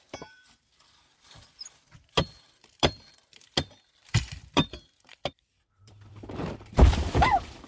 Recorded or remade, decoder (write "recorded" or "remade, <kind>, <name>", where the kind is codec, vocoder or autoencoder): remade, vocoder, BigVGAN v2